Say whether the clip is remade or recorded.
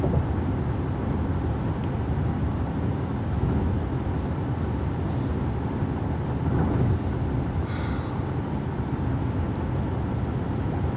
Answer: recorded